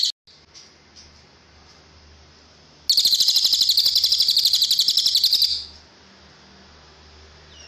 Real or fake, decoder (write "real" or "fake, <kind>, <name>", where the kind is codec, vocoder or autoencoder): real